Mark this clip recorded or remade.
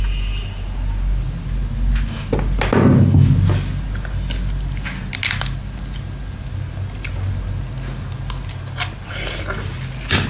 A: recorded